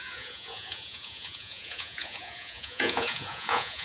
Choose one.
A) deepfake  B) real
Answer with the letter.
A